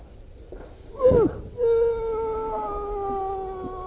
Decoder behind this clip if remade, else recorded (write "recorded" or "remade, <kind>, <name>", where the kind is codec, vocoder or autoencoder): recorded